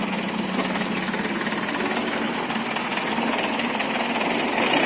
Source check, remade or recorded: recorded